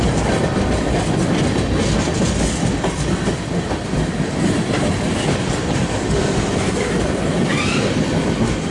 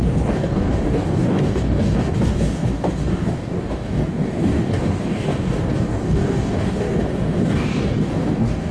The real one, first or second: first